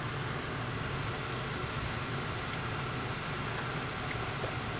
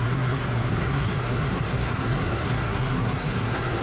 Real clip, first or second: first